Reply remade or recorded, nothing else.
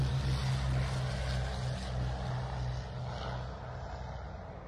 recorded